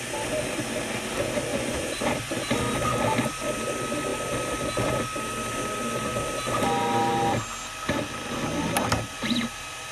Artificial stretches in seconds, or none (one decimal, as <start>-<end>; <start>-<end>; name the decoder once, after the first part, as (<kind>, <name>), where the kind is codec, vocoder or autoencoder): 1.5-2.1 (vocoder, Vocos)